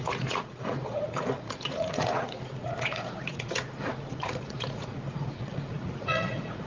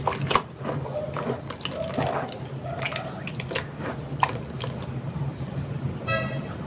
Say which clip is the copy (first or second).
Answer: first